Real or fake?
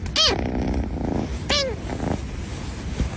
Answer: real